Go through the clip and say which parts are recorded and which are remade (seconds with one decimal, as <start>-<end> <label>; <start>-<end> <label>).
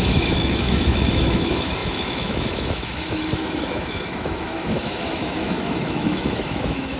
0.0-7.0 remade